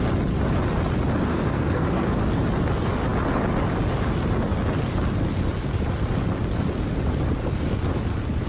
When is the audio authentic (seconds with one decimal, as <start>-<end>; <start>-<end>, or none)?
0.0-1.3; 2.2-8.5